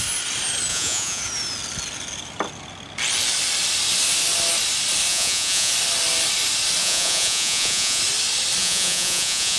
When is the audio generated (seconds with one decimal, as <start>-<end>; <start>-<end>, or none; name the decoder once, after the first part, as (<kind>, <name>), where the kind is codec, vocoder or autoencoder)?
0.7-1.2 (vocoder, Vocos); 5.1-5.7; 6.8-8.0; 8.6-9.6